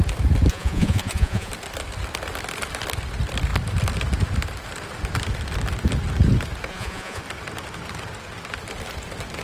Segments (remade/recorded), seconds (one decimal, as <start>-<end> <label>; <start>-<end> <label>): 0.0-0.5 recorded; 0.5-1.5 remade; 1.5-6.7 recorded; 6.7-7.2 remade; 7.2-9.4 recorded